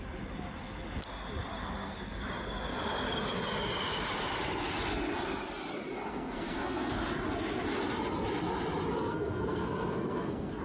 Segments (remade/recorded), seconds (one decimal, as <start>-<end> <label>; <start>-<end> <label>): 0.0-1.6 recorded; 1.6-2.2 remade; 2.2-6.1 recorded; 6.1-6.9 remade; 6.9-8.9 recorded; 8.9-10.6 remade